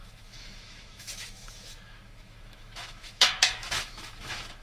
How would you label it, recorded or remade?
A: remade